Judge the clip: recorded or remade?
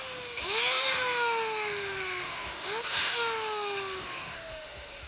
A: remade